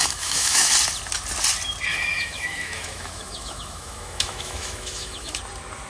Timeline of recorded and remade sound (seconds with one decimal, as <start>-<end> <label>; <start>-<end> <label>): 0.0-0.7 remade; 0.7-1.9 recorded; 1.9-5.4 remade; 5.4-5.9 recorded